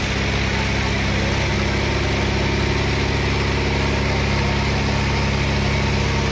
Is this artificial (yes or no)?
no